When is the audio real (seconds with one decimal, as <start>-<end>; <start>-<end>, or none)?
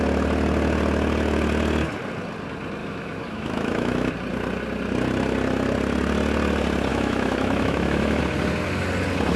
0.0-2.8; 4.1-6.9; 8.2-9.4